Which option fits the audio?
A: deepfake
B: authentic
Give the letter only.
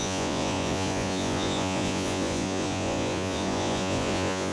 A